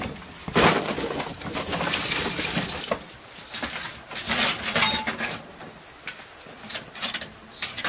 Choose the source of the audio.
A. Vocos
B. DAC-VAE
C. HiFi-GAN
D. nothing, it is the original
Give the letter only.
D